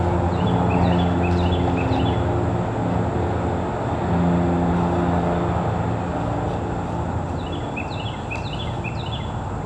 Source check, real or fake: real